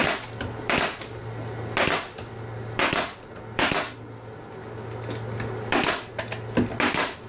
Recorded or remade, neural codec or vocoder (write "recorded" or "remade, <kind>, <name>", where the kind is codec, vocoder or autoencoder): recorded